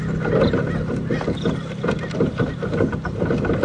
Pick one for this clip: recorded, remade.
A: recorded